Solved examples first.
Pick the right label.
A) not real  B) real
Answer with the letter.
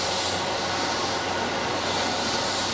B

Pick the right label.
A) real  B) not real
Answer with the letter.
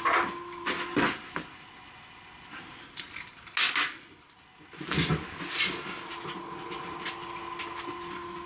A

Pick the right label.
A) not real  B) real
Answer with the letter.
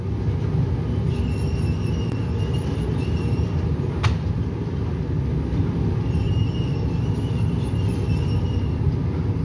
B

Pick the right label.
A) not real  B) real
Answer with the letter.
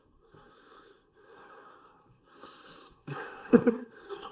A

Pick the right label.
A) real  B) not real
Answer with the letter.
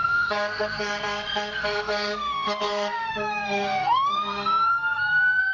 B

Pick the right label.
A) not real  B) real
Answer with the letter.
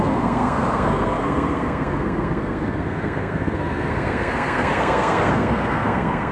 A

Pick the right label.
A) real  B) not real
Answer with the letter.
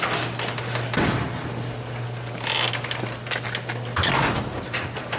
A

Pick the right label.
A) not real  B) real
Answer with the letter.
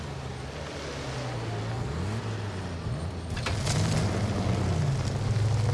B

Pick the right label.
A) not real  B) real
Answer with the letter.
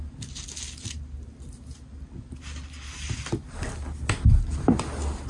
B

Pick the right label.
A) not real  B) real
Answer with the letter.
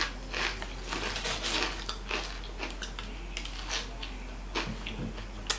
B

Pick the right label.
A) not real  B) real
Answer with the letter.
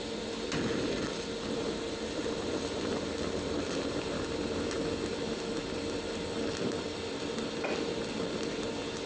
B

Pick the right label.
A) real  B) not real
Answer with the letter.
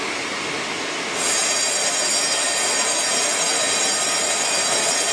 A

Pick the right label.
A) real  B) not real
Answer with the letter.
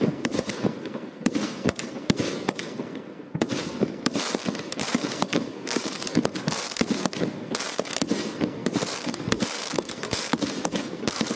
B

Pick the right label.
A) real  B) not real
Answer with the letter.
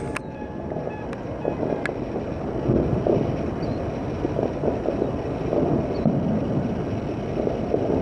A